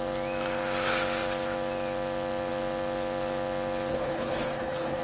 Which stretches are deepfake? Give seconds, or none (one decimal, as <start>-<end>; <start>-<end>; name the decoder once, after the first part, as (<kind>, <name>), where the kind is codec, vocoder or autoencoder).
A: 3.9-5.0 (codec, HILCodec)